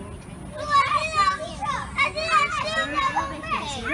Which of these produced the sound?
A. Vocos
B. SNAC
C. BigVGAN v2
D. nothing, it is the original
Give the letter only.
D